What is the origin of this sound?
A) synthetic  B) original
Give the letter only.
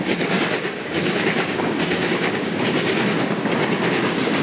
A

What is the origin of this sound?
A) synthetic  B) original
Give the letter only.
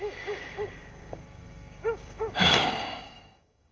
A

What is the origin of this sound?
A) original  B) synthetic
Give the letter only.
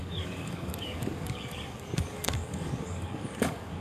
B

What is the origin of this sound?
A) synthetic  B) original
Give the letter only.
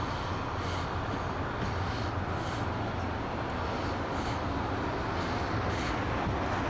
B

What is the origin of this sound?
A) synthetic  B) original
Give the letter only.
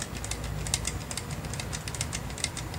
B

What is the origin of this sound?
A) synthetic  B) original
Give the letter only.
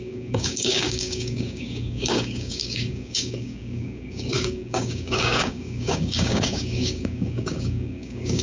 A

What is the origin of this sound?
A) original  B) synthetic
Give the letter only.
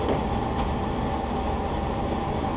A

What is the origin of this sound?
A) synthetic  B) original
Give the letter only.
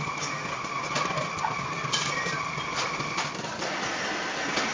B